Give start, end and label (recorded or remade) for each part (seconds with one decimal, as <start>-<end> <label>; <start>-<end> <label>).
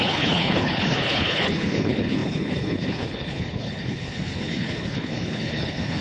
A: 0.0-6.0 remade